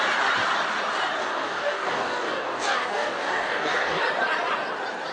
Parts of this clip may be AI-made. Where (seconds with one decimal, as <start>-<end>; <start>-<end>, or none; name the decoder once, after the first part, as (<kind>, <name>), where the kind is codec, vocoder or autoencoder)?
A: 1.2-4.0 (codec, DAC)

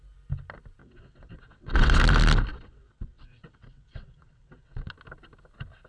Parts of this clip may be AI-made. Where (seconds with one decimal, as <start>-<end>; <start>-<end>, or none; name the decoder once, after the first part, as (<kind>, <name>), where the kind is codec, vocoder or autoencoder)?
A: 0.8-2.0 (vocoder, WaveNeXt); 2.5-4.9

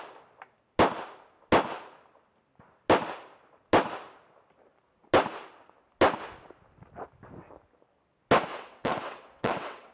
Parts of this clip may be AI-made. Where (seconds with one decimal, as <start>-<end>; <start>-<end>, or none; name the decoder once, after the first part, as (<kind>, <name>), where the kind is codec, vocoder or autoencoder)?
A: 8.5-9.9 (vocoder, WaveNeXt)

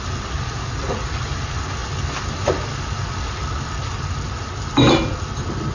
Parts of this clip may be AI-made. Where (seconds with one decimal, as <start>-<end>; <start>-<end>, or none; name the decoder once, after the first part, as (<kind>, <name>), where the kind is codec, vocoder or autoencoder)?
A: none

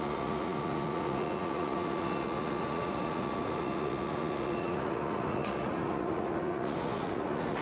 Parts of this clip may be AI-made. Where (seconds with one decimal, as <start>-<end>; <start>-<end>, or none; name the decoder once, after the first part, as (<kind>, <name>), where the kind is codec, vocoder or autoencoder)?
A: 0.0-7.6 (vocoder, Vocos)